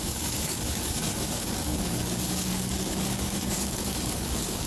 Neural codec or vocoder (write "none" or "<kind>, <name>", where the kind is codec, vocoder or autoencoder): codec, DAC